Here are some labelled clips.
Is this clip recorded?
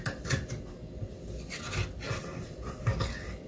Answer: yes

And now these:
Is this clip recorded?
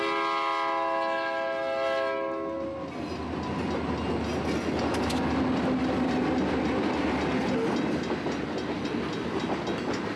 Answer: yes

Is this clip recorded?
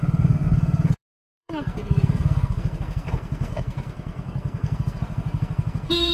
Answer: no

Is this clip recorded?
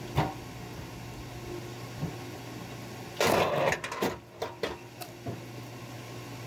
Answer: yes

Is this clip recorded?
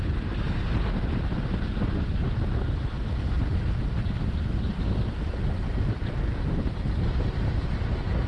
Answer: yes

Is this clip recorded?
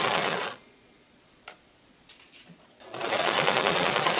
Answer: no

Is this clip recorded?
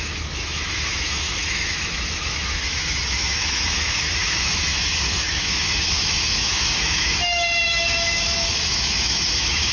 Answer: no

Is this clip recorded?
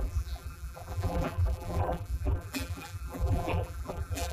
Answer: no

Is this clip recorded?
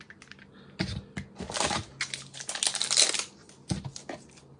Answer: yes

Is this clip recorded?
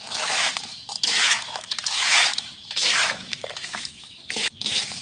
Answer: no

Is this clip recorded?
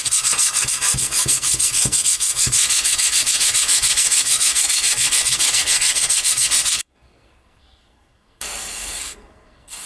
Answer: no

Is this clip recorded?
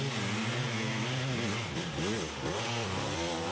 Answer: yes